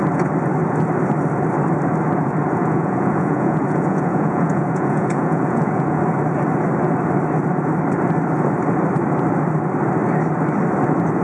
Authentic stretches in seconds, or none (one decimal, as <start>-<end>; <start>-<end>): 0.0-2.6; 6.0-11.2